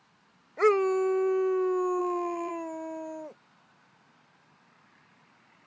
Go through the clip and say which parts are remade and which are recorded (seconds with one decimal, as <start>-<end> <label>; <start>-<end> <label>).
0.0-2.0 recorded; 2.0-2.5 remade; 2.5-5.7 recorded